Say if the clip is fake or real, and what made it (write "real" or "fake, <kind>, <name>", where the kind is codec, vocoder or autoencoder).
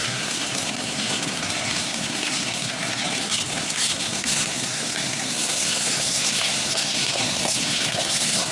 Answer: fake, codec, SNAC